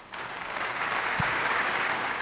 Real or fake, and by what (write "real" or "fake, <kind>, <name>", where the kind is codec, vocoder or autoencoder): fake, codec, DAC